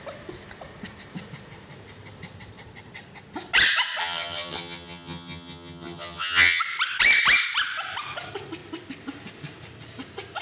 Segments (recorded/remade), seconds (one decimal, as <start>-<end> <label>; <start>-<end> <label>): 0.0-4.0 recorded; 4.0-6.6 remade; 6.6-10.4 recorded